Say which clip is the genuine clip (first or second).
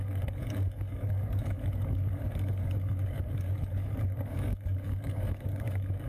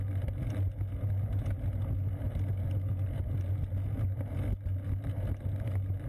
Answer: second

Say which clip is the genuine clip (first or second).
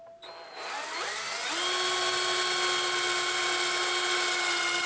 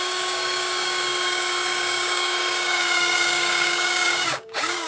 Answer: first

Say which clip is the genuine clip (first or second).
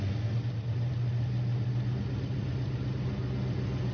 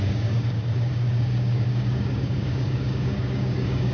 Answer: first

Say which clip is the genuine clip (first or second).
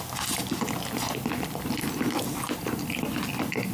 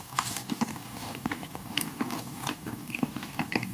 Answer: first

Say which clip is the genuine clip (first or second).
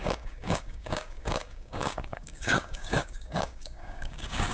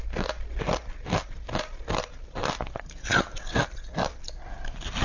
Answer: second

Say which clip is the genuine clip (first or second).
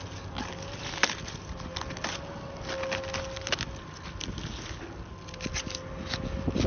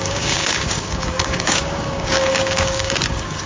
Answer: first